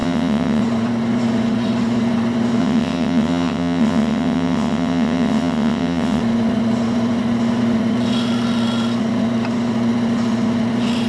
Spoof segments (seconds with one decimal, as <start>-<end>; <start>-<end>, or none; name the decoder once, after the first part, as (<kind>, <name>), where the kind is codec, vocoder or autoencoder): 0.0-0.6 (vocoder, WaveNeXt); 2.6-6.2